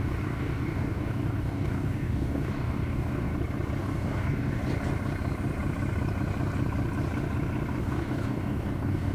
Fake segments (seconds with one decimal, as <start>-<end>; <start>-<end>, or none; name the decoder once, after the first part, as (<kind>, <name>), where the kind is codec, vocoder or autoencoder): 0.0-3.3 (codec, DAC); 3.8-4.6; 7.8-9.1